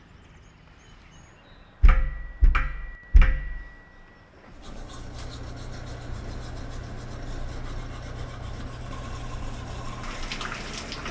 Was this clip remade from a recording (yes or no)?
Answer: no